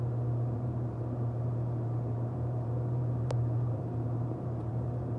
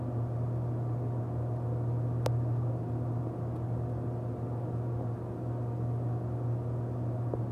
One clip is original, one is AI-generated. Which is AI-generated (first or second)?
first